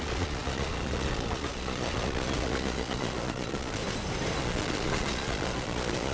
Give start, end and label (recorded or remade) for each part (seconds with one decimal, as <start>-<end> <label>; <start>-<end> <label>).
0.0-3.8 remade; 3.8-4.4 recorded; 4.4-6.1 remade